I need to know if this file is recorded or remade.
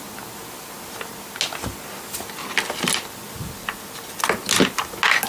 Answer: recorded